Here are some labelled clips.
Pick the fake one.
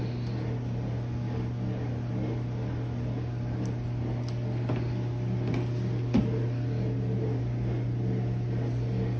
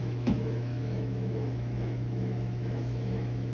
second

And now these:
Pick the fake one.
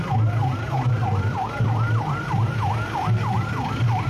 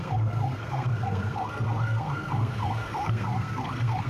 second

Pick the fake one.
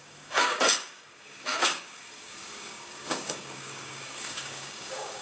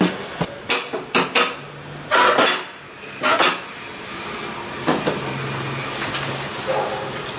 first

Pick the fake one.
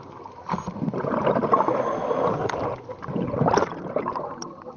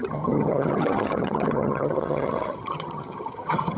second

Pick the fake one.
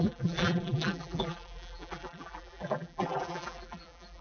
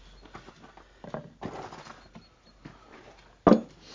first